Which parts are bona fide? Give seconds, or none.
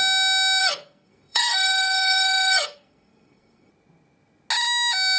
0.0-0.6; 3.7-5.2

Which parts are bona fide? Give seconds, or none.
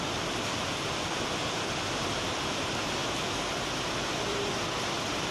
none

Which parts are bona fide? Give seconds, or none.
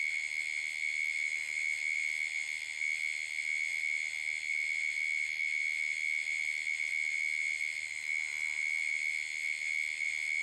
0.0-10.4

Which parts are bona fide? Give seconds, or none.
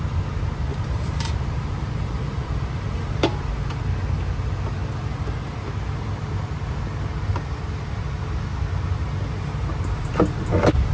0.0-0.7; 3.7-10.9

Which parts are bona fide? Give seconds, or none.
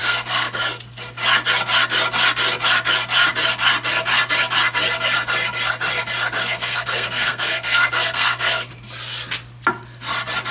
0.6-6.4; 8.7-10.5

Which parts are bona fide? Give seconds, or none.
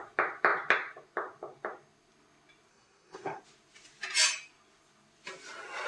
0.0-2.7; 3.4-5.9